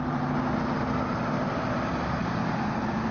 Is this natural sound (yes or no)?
yes